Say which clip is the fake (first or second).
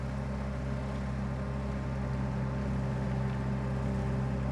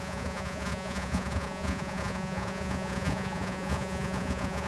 second